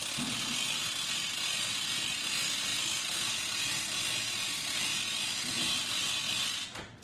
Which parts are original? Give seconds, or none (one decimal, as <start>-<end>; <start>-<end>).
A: 0.0-7.0